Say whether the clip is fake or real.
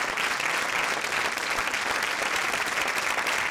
real